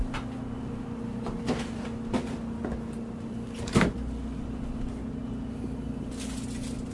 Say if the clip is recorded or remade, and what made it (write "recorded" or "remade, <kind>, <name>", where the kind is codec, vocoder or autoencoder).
recorded